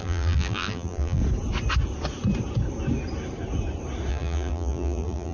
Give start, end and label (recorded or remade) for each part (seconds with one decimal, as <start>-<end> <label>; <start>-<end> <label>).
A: 0.0-1.2 remade; 1.2-4.1 recorded; 4.1-5.3 remade